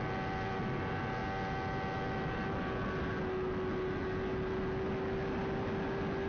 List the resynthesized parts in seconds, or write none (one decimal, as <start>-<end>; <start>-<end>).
none